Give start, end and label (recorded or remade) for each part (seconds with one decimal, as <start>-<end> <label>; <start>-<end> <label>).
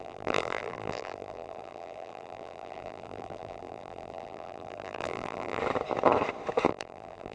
0.0-5.6 remade; 5.6-6.7 recorded; 6.7-7.3 remade